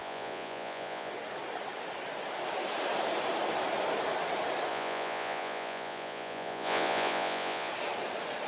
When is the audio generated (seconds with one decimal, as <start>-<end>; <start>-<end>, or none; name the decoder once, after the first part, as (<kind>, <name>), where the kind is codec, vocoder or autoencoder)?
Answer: 0.0-1.1 (vocoder, Vocos); 4.7-7.7